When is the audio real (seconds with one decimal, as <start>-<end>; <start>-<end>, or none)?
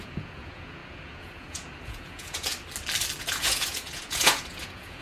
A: 2.5-3.2